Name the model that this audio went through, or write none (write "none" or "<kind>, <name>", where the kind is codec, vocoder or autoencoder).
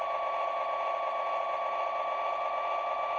none